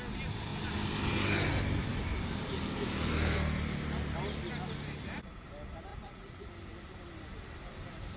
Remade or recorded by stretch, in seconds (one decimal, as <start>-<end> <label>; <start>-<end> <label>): 0.0-5.9 recorded; 5.9-6.5 remade; 6.5-8.2 recorded